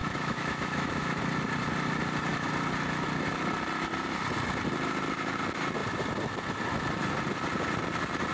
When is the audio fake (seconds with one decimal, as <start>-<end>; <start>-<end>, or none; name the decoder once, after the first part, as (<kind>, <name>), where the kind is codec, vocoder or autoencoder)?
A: 0.0-1.2 (autoencoder, DAC-VAE)